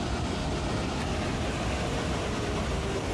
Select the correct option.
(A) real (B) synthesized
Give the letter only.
A